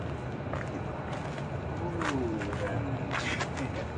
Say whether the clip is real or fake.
real